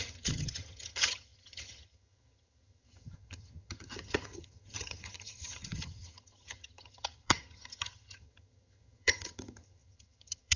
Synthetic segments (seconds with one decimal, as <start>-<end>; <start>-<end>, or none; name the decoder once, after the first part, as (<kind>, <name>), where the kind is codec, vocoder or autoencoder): 0.0-10.6 (vocoder, HiFi-GAN)